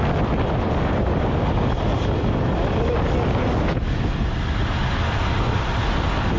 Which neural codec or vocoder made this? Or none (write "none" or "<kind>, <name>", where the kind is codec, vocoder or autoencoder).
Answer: none